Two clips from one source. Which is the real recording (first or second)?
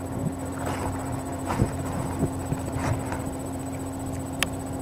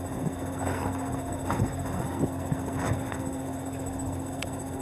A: first